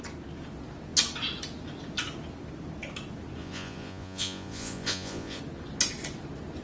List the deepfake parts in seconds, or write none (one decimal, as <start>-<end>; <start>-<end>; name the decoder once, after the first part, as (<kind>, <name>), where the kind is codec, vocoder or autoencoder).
3.4-5.4 (vocoder, Vocos)